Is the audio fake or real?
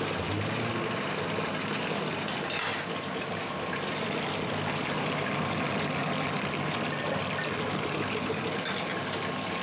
real